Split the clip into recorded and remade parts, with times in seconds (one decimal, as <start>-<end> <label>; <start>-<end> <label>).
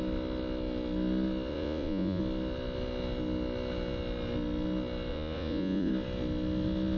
0.0-1.5 recorded; 1.5-2.2 remade; 2.2-5.1 recorded; 5.1-5.9 remade; 5.9-7.0 recorded